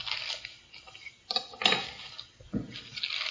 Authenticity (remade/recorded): recorded